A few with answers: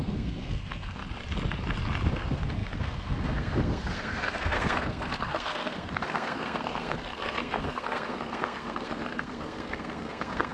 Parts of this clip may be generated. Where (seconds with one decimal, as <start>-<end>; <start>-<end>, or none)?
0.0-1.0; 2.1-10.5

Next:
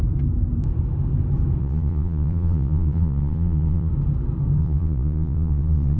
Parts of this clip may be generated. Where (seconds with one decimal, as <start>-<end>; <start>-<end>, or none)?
1.6-3.9; 4.6-6.0

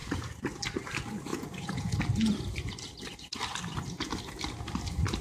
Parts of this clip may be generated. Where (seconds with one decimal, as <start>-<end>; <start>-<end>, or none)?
1.3-1.9

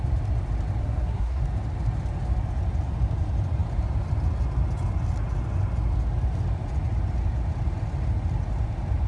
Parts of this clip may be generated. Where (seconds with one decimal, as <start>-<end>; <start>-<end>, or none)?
0.8-1.4